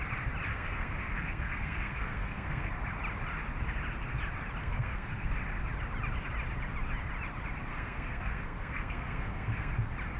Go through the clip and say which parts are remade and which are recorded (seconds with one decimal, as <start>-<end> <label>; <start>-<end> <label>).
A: 0.0-0.5 recorded; 0.5-2.7 remade; 2.7-4.6 recorded; 4.6-5.3 remade; 5.3-7.7 recorded; 7.7-9.7 remade; 9.7-10.2 recorded